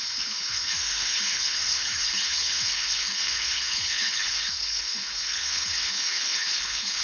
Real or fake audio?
fake